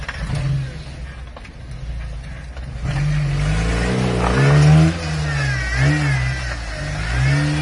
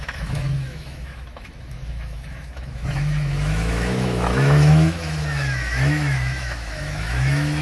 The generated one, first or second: second